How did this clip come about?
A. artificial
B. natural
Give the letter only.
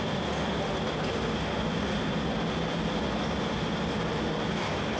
B